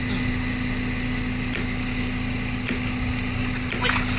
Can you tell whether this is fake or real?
real